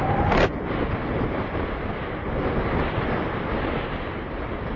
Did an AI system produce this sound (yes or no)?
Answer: no